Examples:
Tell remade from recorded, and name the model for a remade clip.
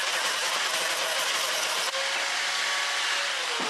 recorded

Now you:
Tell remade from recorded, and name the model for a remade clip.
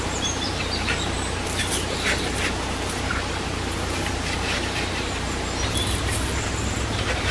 remade, vocoder, BigVGAN v2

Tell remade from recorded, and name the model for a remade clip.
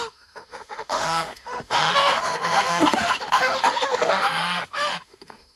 remade, autoencoder, DAC-VAE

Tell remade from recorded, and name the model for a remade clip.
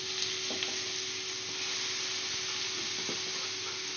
recorded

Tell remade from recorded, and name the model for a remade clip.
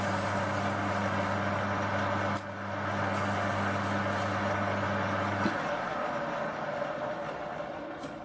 recorded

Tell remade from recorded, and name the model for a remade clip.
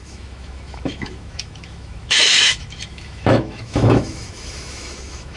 remade, autoencoder, DAC-VAE